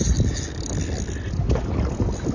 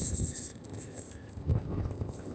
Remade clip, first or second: second